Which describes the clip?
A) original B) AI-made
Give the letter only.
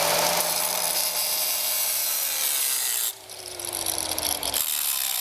B